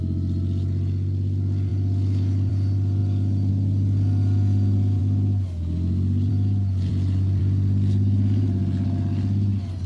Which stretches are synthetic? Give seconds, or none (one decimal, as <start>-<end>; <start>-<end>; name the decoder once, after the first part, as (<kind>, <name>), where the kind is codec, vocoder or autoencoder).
none